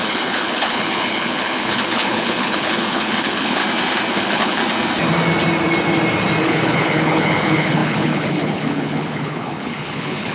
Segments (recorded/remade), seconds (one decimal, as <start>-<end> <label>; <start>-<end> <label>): 0.0-3.6 remade; 3.6-4.1 recorded; 4.1-4.6 remade; 4.6-6.4 recorded; 6.4-10.3 remade